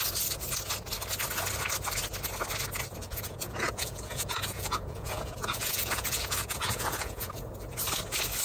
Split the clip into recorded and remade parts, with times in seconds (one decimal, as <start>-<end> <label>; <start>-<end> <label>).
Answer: 0.0-3.0 recorded; 3.0-7.5 remade; 7.5-8.4 recorded